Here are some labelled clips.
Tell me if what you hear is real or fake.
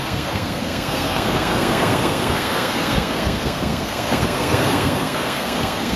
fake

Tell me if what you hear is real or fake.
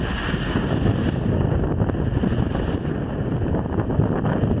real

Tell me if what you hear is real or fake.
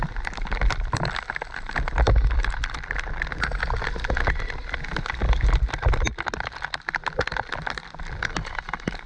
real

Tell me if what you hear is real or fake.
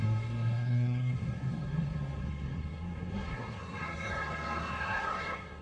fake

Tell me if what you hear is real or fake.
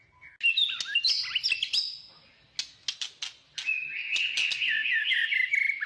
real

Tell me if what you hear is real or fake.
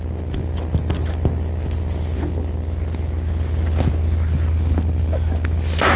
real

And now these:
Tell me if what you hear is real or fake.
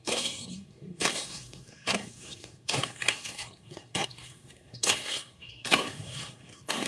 fake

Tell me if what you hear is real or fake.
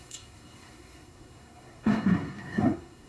fake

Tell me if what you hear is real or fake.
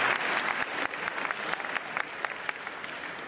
real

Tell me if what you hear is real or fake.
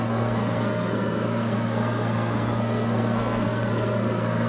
fake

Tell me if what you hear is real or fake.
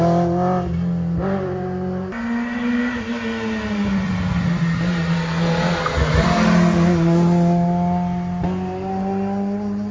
real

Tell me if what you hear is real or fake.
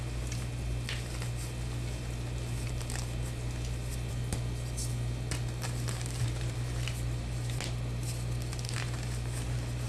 real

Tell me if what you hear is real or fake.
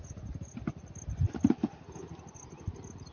real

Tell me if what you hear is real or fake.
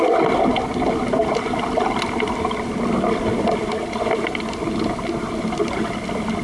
real